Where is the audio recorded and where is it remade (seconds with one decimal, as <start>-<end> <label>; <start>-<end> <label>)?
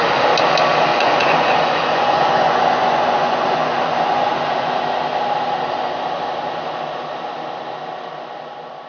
0.0-0.9 recorded; 0.9-4.8 remade; 4.8-8.9 recorded